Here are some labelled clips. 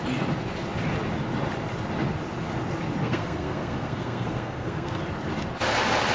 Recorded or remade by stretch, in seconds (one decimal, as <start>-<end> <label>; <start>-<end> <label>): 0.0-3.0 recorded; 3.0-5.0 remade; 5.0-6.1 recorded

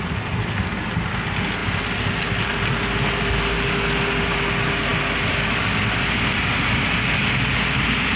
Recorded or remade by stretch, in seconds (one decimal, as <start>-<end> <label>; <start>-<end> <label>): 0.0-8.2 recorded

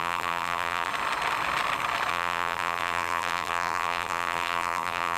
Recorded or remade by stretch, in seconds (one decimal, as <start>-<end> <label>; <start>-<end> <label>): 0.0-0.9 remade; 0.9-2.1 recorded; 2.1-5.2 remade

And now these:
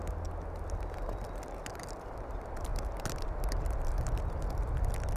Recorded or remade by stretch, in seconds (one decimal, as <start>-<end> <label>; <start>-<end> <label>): 0.0-5.2 recorded

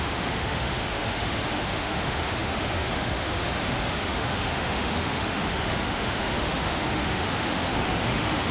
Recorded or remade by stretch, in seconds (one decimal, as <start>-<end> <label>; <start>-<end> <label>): 0.0-8.5 remade